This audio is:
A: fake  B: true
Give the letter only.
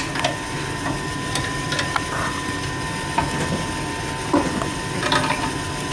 B